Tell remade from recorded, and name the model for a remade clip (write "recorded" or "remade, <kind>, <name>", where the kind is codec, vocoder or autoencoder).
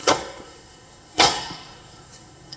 remade, codec, SNAC